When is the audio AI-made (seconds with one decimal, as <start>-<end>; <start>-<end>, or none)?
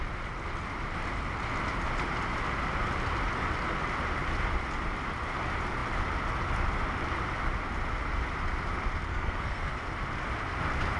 9.1-9.7